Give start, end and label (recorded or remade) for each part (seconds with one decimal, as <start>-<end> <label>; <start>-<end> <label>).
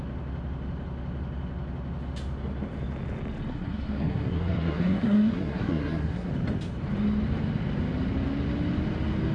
0.0-3.5 recorded; 3.5-6.3 remade; 6.3-9.3 recorded